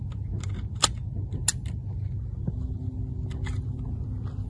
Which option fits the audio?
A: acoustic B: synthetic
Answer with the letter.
A